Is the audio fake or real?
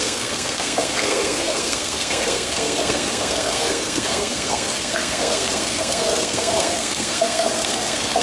fake